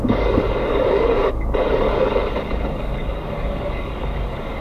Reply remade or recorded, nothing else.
remade